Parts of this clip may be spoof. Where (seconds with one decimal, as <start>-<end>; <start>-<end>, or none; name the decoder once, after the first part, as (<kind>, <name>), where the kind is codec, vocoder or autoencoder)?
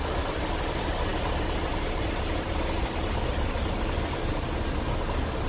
none